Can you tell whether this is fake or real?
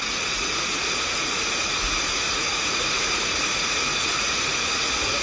fake